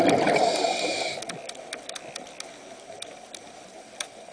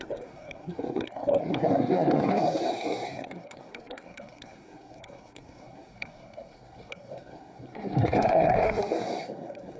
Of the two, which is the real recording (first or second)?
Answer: first